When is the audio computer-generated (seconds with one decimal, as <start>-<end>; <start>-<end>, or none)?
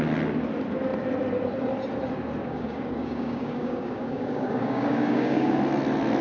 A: 2.4-5.6